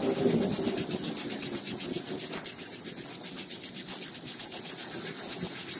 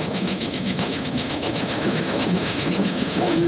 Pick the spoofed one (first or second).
second